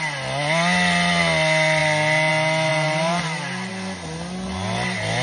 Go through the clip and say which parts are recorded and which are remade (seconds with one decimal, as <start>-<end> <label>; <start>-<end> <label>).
0.0-2.7 recorded; 2.7-3.7 remade; 3.7-5.2 recorded